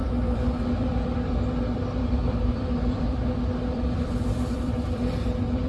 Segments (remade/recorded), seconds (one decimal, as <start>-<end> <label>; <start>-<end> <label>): 0.0-1.3 remade; 1.3-2.0 recorded; 2.0-5.7 remade